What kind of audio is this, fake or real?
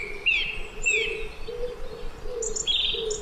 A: real